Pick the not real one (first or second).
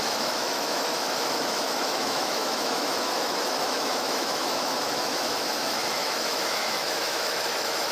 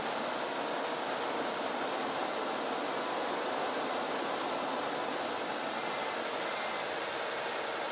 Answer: first